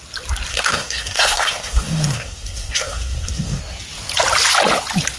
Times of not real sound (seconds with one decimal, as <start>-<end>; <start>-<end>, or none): 0.5-3.6